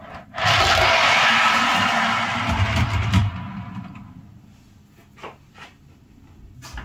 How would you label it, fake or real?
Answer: real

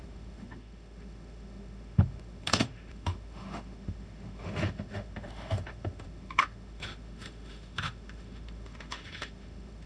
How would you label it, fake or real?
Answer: fake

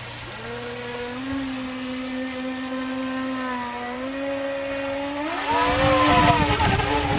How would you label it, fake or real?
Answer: real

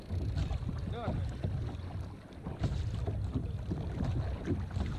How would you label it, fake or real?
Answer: real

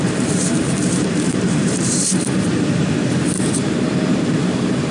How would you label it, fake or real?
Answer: fake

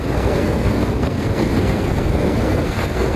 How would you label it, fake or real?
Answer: fake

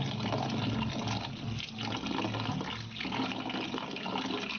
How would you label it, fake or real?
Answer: real